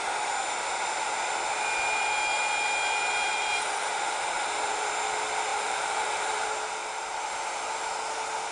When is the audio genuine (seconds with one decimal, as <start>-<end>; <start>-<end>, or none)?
0.0-3.3; 4.9-5.5; 6.5-8.5